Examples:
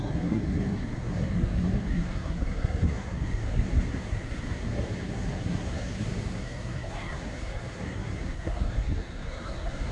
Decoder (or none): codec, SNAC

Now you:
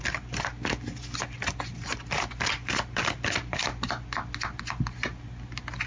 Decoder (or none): none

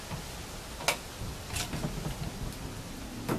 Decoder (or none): none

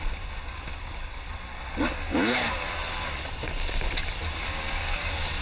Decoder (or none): none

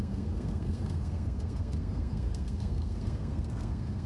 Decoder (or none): codec, SNAC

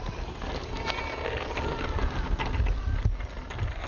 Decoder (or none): none